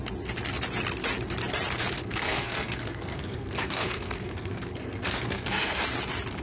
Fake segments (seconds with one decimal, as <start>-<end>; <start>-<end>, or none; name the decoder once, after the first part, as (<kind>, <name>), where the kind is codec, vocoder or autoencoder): 2.0-5.8 (codec, SNAC)